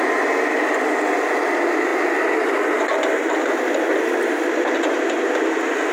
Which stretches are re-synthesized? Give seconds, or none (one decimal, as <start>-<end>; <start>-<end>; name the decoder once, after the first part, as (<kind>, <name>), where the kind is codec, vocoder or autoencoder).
none